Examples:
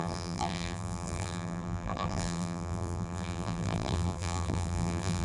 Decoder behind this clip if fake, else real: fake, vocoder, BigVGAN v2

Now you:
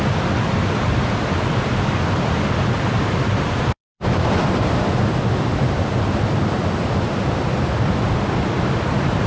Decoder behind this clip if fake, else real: fake, vocoder, BigVGAN v2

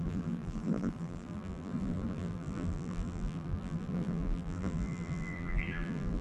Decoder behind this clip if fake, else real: fake, vocoder, BigVGAN v2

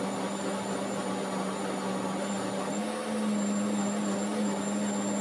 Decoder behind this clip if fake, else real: real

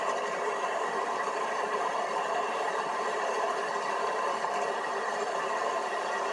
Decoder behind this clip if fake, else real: fake, vocoder, BigVGAN v2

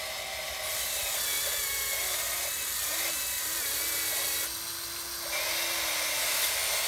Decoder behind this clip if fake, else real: real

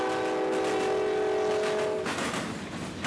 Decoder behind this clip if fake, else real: real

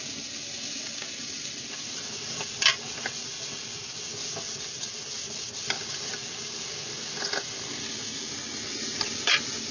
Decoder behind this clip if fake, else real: real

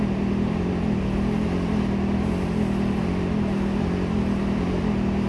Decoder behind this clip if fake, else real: real